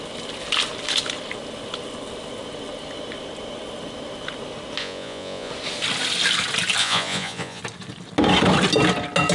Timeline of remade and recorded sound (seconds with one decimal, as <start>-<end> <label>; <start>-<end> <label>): 0.0-4.8 recorded; 4.8-5.5 remade; 5.5-6.8 recorded; 6.8-7.6 remade; 7.6-9.3 recorded